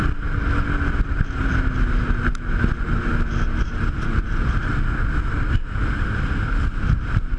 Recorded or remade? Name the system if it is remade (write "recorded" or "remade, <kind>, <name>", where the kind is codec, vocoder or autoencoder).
recorded